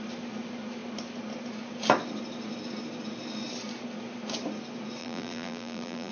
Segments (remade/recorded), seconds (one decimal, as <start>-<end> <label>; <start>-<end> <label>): 0.0-5.0 recorded; 5.0-6.1 remade

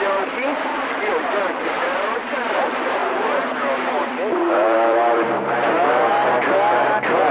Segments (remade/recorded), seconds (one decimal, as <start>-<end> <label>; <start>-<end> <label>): 0.0-7.3 remade

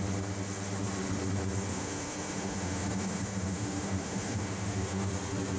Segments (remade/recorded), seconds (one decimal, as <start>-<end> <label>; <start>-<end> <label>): 0.0-1.7 recorded; 1.7-5.1 remade; 5.1-5.6 recorded

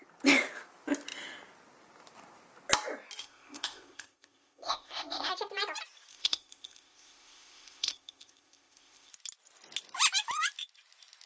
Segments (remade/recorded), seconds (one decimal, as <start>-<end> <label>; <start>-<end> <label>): 0.0-3.2 recorded; 3.2-5.3 remade; 5.3-6.1 recorded; 6.1-9.1 remade; 9.1-11.3 recorded